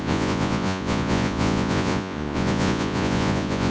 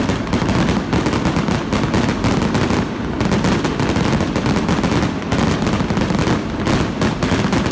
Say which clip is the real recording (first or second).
second